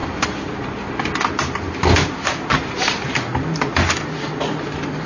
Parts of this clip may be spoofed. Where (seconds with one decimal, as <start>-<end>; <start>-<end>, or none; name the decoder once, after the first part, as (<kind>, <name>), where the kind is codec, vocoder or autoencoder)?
none